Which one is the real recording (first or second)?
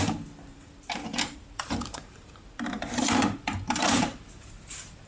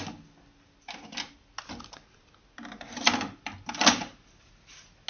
second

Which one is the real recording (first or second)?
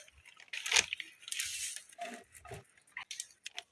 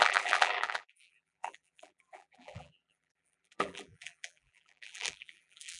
first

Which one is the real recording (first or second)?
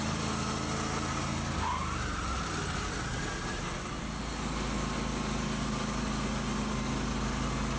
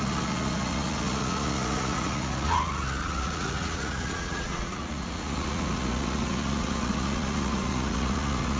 first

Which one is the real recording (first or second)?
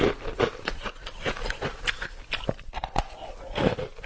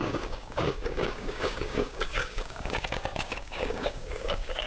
first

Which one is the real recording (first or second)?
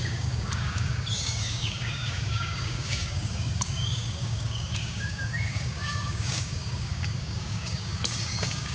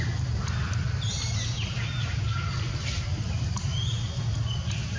second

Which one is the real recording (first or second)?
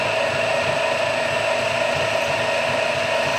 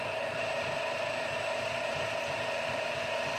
first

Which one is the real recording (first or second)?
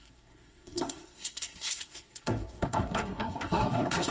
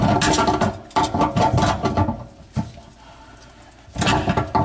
second